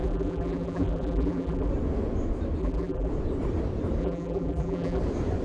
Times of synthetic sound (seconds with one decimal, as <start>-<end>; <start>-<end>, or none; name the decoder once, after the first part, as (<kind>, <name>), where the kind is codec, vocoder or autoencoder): 0.0-1.7 (vocoder, BigVGAN v2); 2.6-3.1; 4.0-5.0